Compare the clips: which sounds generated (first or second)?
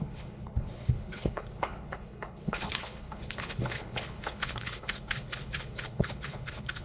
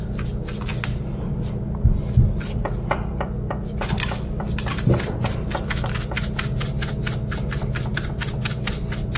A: first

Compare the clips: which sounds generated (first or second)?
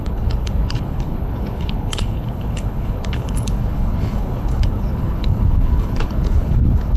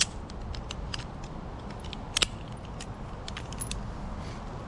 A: first